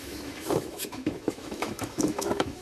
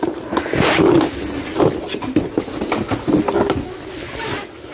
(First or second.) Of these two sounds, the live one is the second